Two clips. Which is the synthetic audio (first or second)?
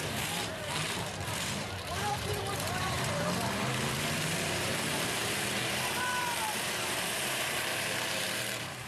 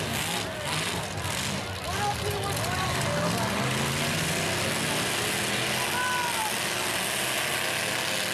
first